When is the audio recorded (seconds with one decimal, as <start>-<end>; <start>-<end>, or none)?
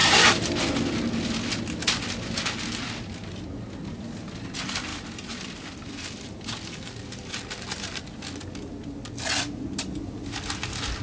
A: 0.6-4.9; 7.4-11.0